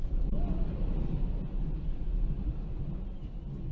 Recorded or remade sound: recorded